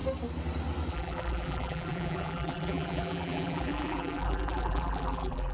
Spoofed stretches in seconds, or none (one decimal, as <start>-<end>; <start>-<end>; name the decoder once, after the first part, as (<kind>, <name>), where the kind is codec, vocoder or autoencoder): 0.9-5.5 (vocoder, BigVGAN v2)

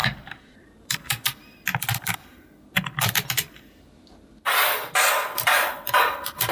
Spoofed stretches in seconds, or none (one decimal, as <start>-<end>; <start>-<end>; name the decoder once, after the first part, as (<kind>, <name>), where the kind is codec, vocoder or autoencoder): 0.0-0.9 (vocoder, BigVGAN v2)

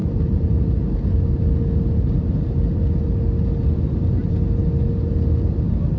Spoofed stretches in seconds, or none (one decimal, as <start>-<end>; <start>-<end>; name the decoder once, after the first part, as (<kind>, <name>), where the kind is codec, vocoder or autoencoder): 0.0-1.2 (vocoder, BigVGAN v2)

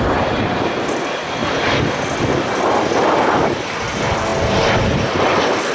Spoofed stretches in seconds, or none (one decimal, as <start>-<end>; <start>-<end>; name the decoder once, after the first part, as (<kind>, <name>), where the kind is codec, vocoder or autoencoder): none